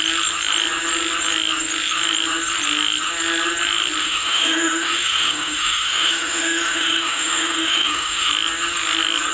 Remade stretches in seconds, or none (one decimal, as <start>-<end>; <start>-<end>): 4.0-8.3